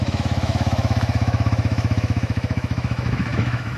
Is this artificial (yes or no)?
yes